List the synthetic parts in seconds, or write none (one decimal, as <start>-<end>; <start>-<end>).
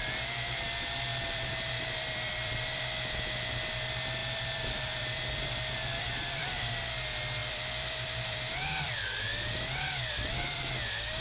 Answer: 1.1-2.8; 4.2-6.7; 7.4-10.6